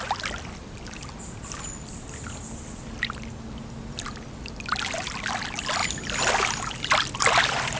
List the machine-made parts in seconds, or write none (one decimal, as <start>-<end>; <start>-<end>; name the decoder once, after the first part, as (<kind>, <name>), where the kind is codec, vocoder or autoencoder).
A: none